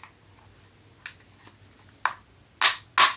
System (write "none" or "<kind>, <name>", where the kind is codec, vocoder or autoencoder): none